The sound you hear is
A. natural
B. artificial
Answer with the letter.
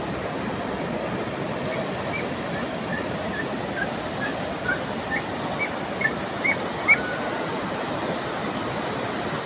A